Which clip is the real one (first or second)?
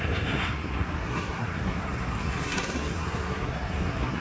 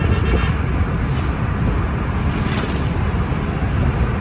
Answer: second